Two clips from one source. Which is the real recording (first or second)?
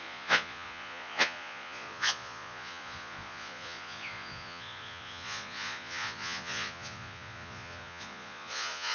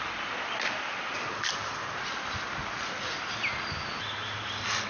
second